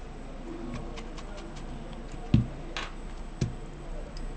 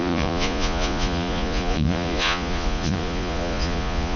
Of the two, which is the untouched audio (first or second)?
first